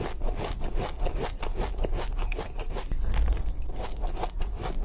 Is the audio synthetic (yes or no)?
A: no